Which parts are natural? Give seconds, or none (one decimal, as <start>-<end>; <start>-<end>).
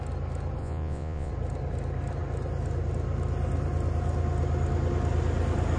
0.0-0.6; 1.3-5.8